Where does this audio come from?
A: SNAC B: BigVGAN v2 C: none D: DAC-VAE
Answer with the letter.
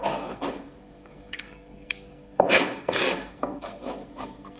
A